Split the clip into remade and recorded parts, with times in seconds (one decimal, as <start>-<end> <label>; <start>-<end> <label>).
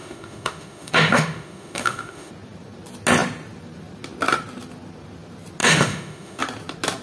0.0-2.3 remade; 2.3-5.6 recorded; 5.6-6.4 remade; 6.4-7.0 recorded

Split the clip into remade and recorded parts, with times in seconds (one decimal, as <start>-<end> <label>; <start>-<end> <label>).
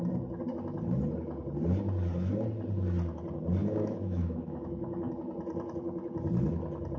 0.0-3.6 recorded; 3.6-5.1 remade; 5.1-7.0 recorded